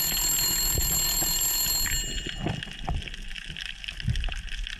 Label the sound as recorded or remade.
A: recorded